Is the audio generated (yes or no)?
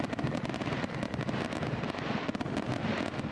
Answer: no